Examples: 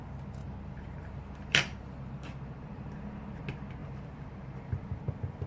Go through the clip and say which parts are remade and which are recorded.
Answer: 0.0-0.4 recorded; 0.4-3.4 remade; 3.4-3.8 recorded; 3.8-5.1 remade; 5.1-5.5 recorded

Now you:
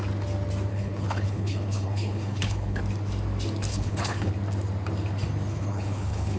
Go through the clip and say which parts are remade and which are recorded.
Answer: 0.0-0.7 recorded; 0.7-2.8 remade; 2.8-3.7 recorded; 3.7-4.3 remade; 4.3-5.5 recorded; 5.5-6.4 remade

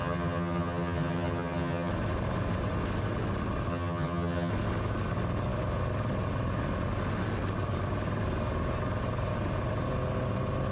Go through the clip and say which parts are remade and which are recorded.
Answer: 0.0-1.9 remade; 1.9-3.7 recorded; 3.7-4.5 remade; 4.5-10.7 recorded